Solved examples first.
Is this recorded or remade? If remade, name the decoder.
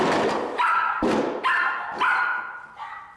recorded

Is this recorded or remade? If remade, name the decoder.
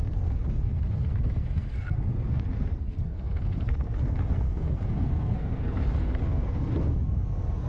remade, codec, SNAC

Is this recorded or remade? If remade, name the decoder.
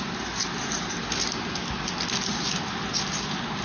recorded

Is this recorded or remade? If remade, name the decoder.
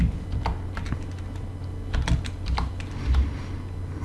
recorded